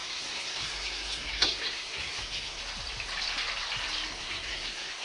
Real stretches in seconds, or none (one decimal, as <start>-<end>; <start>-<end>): 2.6-4.1